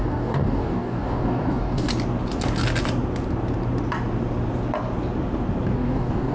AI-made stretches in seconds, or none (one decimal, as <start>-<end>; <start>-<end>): 0.0-1.9; 5.7-6.3